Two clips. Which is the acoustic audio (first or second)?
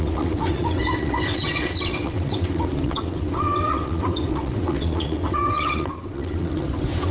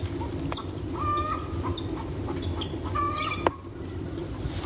second